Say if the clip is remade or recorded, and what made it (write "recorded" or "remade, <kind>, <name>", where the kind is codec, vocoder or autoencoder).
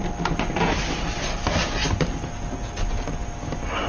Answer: recorded